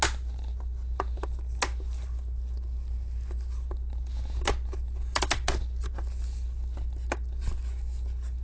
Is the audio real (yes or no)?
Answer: yes